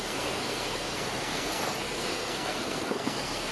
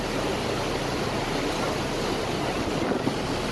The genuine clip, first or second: second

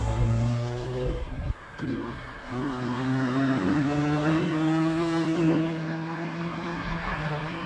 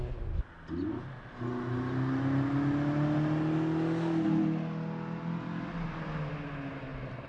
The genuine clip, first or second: second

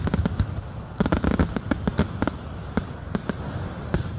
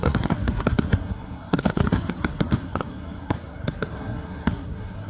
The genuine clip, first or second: first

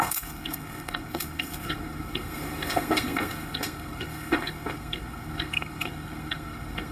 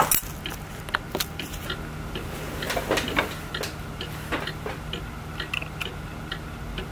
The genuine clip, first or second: second